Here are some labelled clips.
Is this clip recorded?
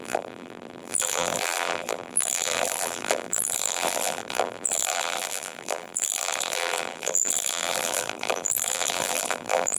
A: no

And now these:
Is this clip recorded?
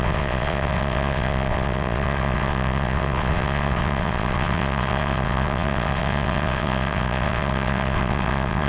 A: no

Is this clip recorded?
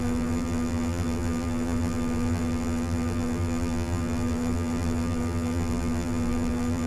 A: no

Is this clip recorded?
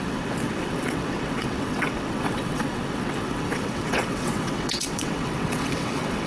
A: no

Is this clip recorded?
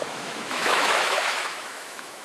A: no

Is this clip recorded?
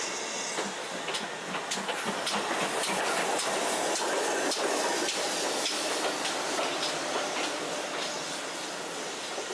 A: yes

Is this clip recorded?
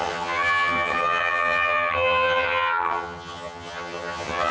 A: no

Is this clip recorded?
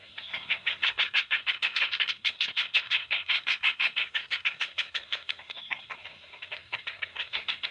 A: no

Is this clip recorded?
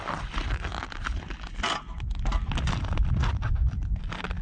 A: yes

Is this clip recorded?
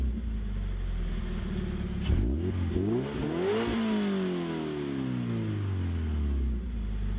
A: yes